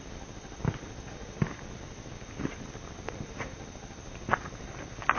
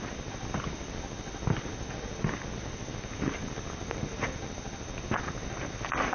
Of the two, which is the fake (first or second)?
first